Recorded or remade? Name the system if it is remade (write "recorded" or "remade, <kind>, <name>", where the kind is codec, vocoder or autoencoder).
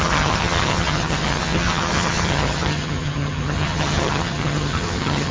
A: remade, vocoder, HiFi-GAN